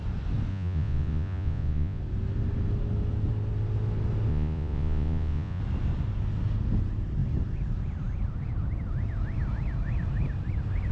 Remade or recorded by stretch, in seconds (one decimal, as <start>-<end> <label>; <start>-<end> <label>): 0.0-0.5 recorded; 0.5-2.0 remade; 2.0-4.3 recorded; 4.3-5.6 remade; 5.6-10.9 recorded

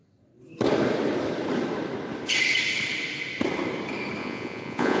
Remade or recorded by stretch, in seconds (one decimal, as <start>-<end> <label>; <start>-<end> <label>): 0.0-4.2 recorded; 4.2-5.0 remade